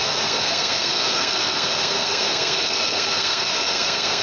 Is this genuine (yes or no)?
no